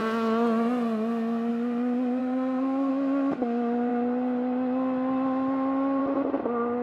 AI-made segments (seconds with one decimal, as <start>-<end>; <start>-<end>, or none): 2.2-2.9